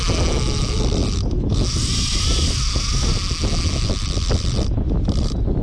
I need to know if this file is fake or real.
real